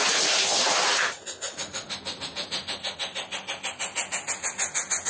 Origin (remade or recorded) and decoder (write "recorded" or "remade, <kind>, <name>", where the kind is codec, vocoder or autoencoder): recorded